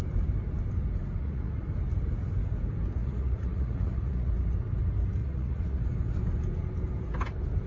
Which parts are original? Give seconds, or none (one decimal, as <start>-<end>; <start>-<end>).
0.0-1.2; 1.7-3.0; 4.3-5.2; 5.8-7.7